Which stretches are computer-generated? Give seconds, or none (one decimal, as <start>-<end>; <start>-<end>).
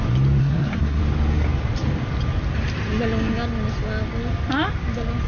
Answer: 0.4-1.0